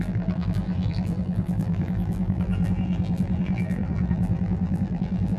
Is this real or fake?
fake